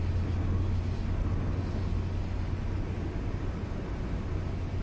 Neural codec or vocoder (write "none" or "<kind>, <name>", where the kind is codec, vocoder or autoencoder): none